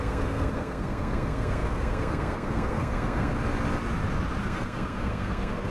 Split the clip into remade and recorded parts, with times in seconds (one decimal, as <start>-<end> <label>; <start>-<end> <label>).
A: 0.0-3.3 remade; 3.3-4.4 recorded; 4.4-5.7 remade